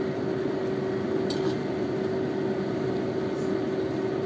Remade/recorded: recorded